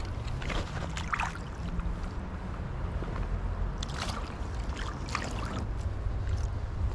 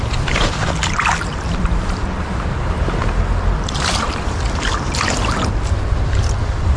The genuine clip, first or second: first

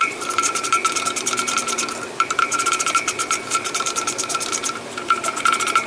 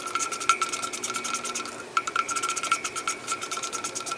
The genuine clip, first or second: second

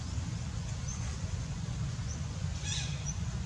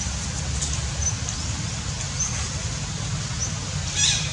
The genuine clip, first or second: second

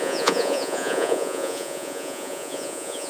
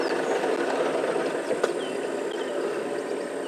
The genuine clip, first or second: second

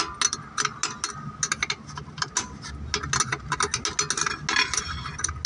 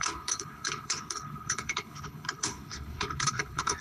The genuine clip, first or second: first